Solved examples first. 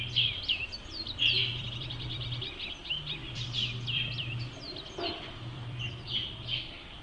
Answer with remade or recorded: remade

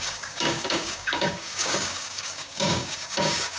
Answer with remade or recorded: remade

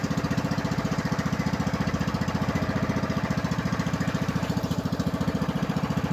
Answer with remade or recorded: remade